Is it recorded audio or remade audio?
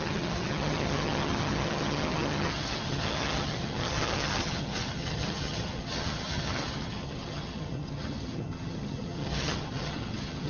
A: remade